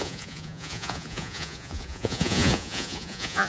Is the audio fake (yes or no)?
yes